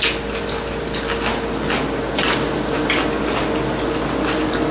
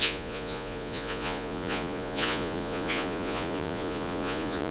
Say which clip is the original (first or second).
first